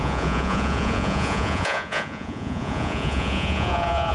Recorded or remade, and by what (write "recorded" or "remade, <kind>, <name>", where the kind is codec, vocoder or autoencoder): remade, vocoder, Vocos